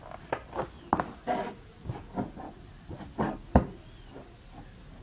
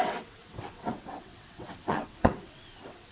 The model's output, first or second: second